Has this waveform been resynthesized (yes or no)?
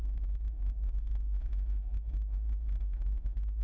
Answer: yes